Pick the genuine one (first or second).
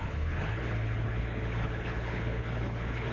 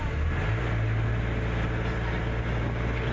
second